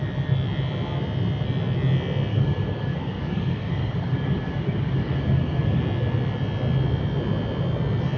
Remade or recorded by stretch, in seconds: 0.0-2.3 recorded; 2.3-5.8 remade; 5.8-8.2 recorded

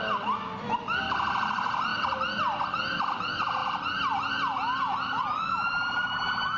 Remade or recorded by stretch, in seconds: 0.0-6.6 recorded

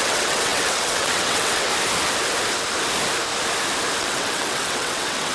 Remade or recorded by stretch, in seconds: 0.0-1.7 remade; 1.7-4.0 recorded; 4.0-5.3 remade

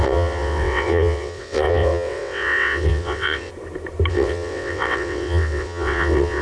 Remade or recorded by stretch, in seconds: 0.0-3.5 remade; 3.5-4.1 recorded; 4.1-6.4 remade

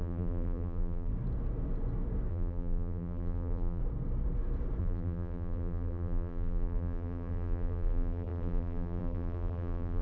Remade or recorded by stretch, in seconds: 0.0-1.1 remade; 1.1-2.3 recorded; 2.3-3.8 remade; 3.8-4.8 recorded; 4.8-10.0 remade

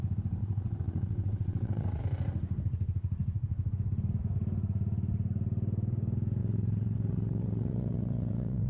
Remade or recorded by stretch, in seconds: 0.0-0.4 recorded; 0.4-2.0 remade; 2.0-6.4 recorded; 6.4-8.7 remade

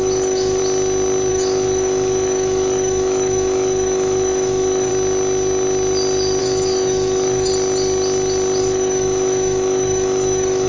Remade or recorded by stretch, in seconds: 0.0-0.6 remade; 0.6-1.3 recorded; 1.3-4.9 remade; 4.9-6.4 recorded; 6.4-7.5 remade; 7.5-8.6 recorded; 8.6-10.7 remade

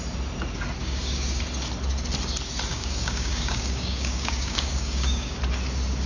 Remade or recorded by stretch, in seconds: 0.0-0.8 recorded; 0.8-1.4 remade; 1.4-2.7 recorded; 2.7-5.4 remade; 5.4-6.1 recorded